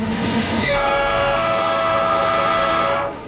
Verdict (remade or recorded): remade